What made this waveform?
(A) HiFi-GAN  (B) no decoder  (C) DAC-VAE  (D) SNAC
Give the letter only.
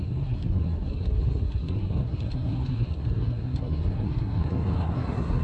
D